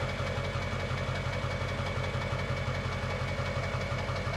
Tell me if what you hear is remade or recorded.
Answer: recorded